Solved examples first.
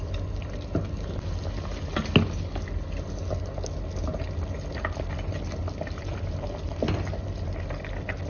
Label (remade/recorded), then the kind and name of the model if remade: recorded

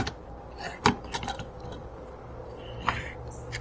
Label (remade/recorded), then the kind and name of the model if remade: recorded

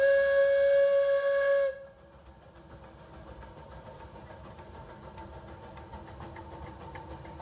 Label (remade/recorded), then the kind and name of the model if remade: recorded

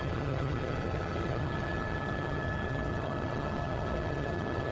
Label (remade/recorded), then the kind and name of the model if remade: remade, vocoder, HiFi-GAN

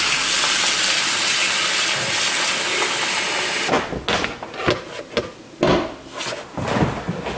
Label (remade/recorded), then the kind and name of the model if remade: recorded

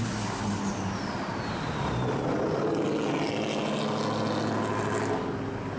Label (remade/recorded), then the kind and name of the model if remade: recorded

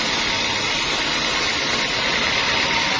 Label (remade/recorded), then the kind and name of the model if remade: recorded